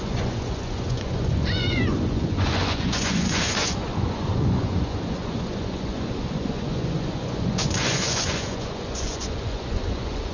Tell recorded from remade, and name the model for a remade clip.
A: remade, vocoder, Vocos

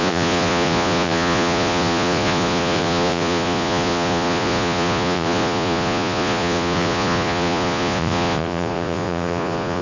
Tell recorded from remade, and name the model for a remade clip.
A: remade, vocoder, Vocos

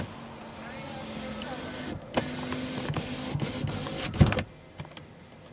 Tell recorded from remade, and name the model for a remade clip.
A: recorded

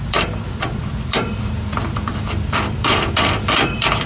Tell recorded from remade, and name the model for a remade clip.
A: remade, vocoder, BigVGAN v2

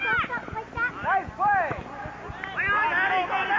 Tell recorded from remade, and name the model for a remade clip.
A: recorded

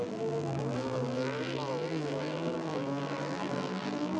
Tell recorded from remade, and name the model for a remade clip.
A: remade, vocoder, BigVGAN v2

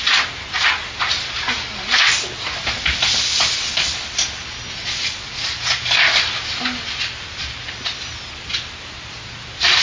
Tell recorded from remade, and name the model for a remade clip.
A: recorded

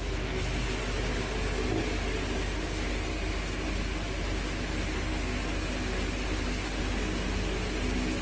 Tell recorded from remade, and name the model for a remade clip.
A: recorded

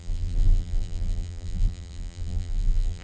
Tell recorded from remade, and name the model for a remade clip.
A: remade, vocoder, BigVGAN v2